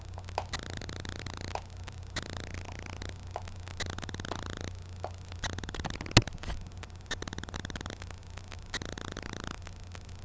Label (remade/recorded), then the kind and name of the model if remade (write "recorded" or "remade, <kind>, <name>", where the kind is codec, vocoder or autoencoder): recorded